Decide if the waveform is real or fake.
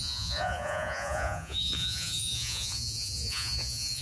fake